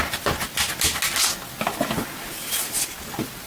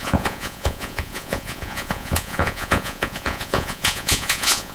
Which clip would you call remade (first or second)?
second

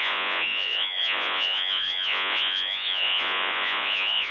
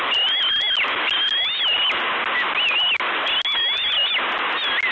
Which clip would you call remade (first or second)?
first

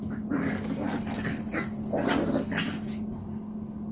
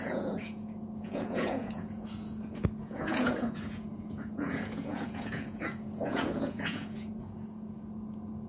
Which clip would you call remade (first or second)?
second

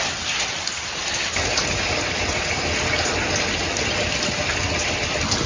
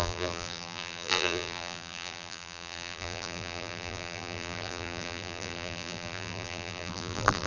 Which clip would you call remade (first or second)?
second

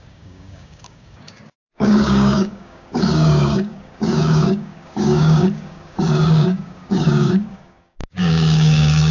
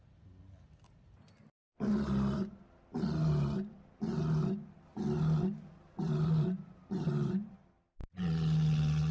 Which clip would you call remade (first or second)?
first